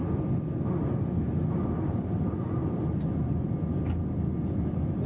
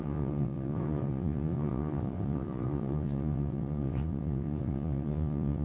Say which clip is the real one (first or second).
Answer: first